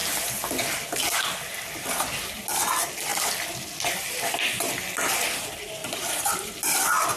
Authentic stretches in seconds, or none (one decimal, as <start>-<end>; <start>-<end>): 0.0-5.8; 6.8-7.2